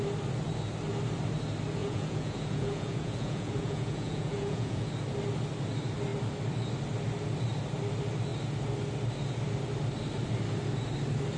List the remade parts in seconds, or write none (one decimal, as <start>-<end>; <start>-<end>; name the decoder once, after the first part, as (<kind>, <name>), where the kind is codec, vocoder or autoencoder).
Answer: 1.8-4.9 (vocoder, Vocos)